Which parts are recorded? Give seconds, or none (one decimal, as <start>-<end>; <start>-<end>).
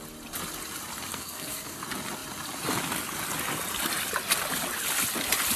0.0-1.1; 1.8-5.6